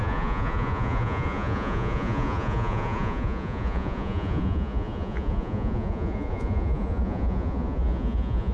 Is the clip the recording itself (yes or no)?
no